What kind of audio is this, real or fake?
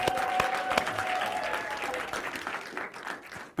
real